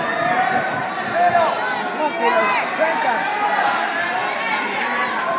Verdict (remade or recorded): recorded